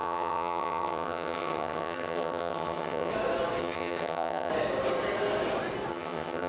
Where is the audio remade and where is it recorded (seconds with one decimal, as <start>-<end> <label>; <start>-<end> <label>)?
0.0-3.1 remade; 3.1-3.6 recorded; 3.6-4.5 remade; 4.5-5.9 recorded; 5.9-6.5 remade